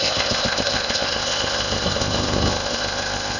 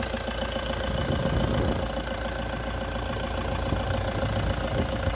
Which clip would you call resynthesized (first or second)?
first